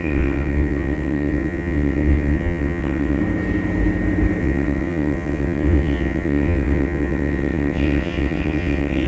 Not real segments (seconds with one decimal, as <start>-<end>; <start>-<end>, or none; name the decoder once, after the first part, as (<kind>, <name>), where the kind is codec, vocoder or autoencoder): 0.0-3.2 (vocoder, WaveNeXt); 4.4-9.1